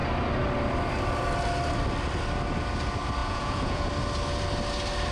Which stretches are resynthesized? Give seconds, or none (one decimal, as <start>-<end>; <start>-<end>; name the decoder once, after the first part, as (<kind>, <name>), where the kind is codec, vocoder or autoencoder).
3.2-3.9 (vocoder, Vocos)